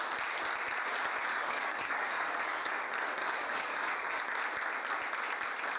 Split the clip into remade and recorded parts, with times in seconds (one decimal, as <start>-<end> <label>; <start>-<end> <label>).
0.0-1.3 recorded; 1.3-2.7 remade; 2.7-3.2 recorded; 3.2-4.2 remade; 4.2-5.8 recorded